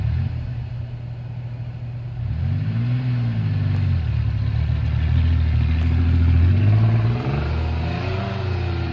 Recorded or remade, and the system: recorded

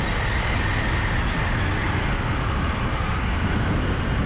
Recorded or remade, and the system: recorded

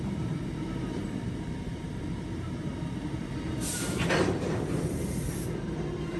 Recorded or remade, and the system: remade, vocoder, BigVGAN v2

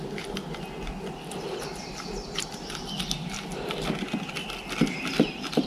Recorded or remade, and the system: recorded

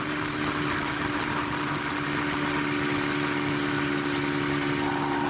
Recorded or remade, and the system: recorded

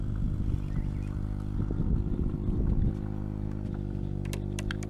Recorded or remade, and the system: recorded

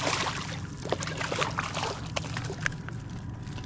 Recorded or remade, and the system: recorded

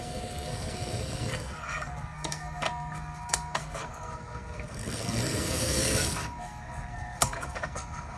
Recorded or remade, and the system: remade, codec, SNAC